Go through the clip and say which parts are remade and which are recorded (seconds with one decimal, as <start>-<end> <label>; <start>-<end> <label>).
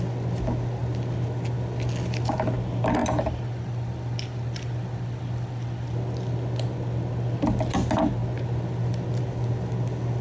0.0-10.2 recorded